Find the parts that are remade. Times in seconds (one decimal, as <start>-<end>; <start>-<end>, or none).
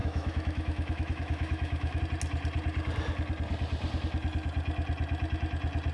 0.0-2.0